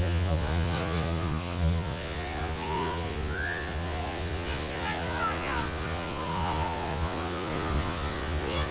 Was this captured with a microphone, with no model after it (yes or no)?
no